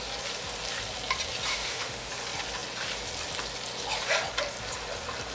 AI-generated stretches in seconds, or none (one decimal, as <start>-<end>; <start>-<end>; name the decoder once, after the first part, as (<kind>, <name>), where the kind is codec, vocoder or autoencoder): 1.5-2.1 (autoencoder, DAC-VAE)